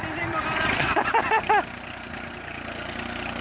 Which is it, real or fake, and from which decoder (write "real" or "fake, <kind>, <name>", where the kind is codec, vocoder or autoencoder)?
real